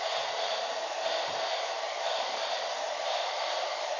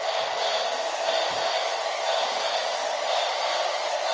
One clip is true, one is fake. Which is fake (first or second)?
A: first